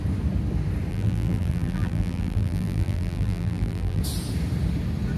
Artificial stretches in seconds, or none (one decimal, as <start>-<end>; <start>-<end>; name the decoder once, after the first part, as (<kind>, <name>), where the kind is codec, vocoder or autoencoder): 0.9-4.0 (vocoder, BigVGAN v2)